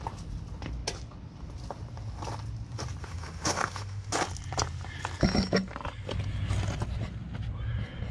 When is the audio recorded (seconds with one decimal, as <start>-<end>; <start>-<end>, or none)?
0.0-3.0; 4.1-8.1